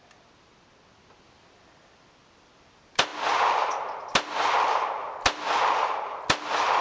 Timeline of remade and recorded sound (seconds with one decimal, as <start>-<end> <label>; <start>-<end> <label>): 0.0-6.8 recorded